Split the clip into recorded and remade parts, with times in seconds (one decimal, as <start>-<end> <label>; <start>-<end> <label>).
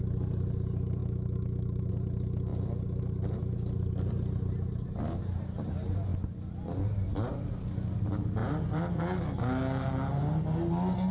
0.0-1.0 recorded; 1.0-1.9 remade; 1.9-11.1 recorded